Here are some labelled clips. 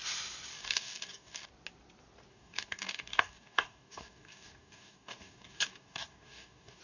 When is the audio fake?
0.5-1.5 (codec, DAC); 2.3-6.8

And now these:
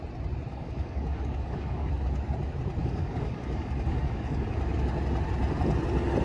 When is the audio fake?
0.5-1.9 (codec, DAC); 2.8-4.6

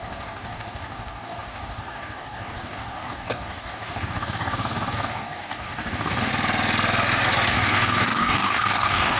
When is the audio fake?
0.0-6.3 (codec, DAC); 7.5-9.2

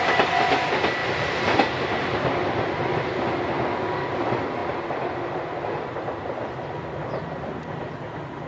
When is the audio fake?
none

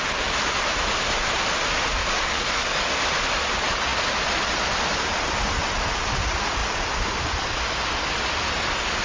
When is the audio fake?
2.0-3.0 (codec, DAC)

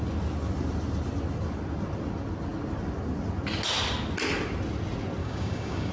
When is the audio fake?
5.2-5.9 (codec, DAC)